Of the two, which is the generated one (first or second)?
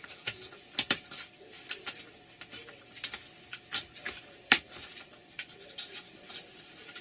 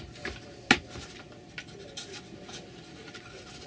first